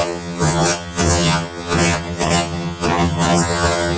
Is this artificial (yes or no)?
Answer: yes